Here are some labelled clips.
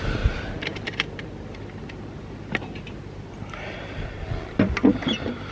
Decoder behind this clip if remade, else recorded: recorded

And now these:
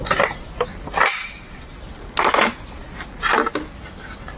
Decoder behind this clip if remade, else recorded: recorded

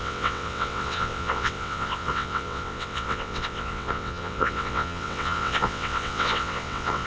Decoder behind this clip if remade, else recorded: remade, vocoder, WaveNeXt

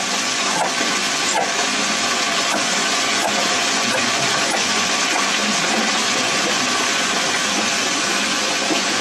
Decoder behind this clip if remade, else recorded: remade, vocoder, Vocos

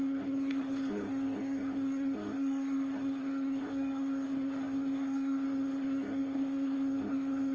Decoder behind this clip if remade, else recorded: remade, codec, SNAC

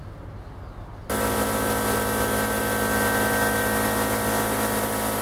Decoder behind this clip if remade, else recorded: recorded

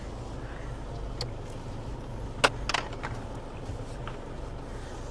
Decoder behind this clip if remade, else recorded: recorded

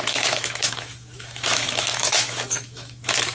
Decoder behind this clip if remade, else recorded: remade, autoencoder, DAC-VAE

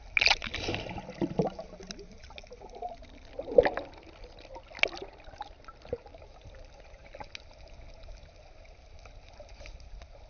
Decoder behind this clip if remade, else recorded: recorded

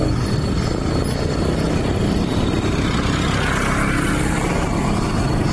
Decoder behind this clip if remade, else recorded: recorded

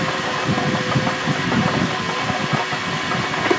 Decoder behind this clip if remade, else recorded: recorded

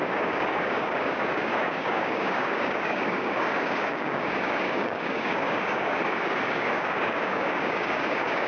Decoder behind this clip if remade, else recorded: remade, codec, DAC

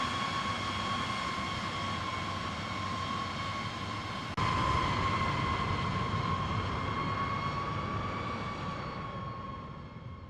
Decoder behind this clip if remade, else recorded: recorded